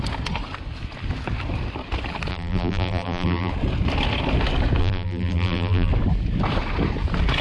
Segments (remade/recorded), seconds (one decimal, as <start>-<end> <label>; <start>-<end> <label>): 0.0-2.3 recorded; 2.3-3.5 remade; 3.5-4.8 recorded; 4.8-5.9 remade; 5.9-7.4 recorded